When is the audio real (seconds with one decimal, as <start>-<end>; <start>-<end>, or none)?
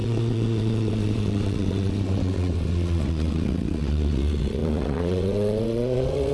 none